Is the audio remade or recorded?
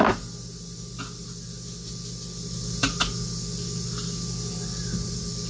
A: recorded